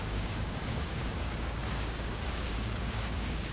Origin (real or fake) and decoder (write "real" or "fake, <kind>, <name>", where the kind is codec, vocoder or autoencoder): fake, codec, DAC